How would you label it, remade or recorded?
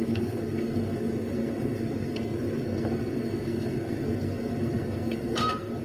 remade